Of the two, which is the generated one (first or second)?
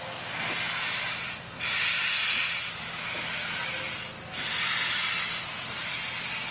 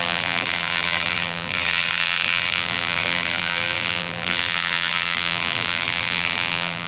second